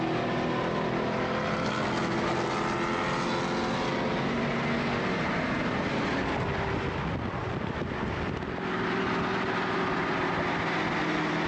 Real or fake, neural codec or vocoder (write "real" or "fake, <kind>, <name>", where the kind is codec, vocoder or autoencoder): real